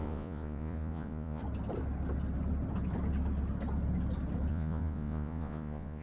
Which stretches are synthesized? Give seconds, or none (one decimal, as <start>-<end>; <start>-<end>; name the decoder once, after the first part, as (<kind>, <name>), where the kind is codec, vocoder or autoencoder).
0.0-1.4 (vocoder, Vocos); 4.5-6.0

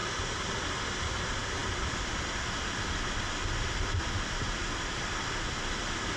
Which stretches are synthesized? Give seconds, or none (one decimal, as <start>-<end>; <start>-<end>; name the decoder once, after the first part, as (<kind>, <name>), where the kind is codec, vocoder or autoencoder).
none

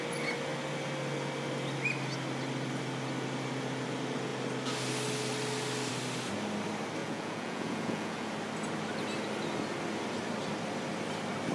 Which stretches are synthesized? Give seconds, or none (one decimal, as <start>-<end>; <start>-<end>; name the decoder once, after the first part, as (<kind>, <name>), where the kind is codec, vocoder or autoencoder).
7.0-8.3 (vocoder, Vocos)

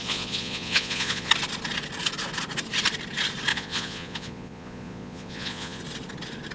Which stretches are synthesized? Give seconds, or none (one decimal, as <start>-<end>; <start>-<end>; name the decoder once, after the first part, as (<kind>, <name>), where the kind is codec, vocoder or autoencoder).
0.0-1.3 (vocoder, Vocos); 3.5-5.8